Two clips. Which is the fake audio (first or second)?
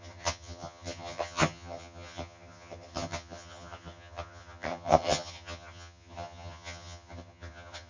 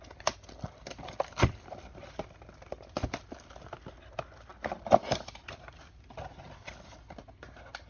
first